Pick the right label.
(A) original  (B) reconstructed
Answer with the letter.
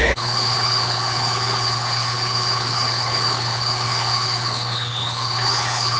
B